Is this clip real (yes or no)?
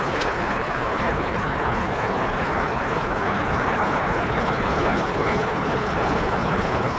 no